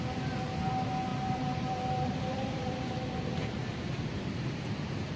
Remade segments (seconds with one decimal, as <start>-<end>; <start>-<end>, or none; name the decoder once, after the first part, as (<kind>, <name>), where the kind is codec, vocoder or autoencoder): 1.1-2.9 (vocoder, BigVGAN v2); 3.4-5.2

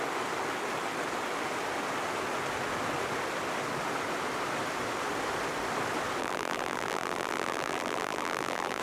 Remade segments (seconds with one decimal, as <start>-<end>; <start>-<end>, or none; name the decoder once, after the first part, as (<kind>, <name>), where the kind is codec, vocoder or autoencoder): 6.2-8.8 (vocoder, BigVGAN v2)